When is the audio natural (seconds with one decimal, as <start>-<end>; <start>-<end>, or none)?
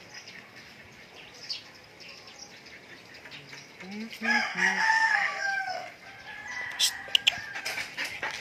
0.0-4.5; 5.9-8.4